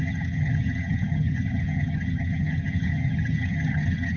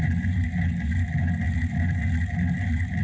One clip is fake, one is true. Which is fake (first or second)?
first